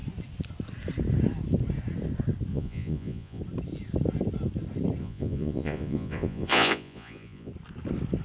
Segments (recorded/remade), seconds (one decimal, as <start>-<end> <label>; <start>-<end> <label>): 0.0-2.5 recorded; 2.5-3.4 remade; 3.4-5.0 recorded; 5.0-7.5 remade; 7.5-8.2 recorded